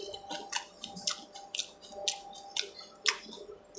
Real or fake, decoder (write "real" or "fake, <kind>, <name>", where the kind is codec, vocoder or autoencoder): real